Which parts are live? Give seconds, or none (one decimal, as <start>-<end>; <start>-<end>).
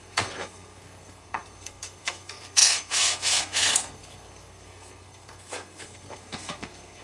none